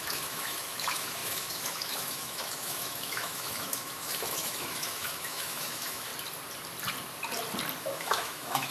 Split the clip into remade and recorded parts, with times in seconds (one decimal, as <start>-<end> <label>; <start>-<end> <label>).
0.0-6.1 remade; 6.1-7.8 recorded; 7.8-8.7 remade